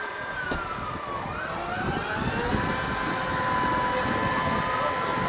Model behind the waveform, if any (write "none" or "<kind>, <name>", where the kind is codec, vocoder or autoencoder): none